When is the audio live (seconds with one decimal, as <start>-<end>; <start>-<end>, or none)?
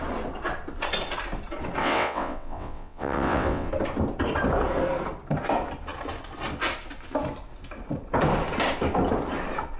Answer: 0.0-1.8; 3.7-9.8